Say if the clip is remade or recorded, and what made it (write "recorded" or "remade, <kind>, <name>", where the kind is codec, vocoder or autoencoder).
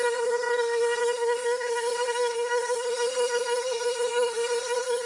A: remade, codec, SNAC